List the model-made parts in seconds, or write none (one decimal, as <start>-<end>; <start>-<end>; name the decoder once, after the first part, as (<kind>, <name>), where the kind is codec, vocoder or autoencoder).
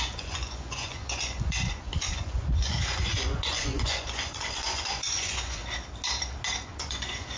0.0-5.6 (vocoder, Vocos); 6.6-7.4